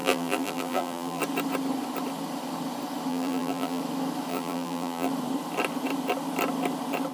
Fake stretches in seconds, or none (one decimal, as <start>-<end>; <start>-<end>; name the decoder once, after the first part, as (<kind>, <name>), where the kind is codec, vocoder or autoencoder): 0.0-1.2 (vocoder, BigVGAN v2); 3.1-3.8; 4.3-5.1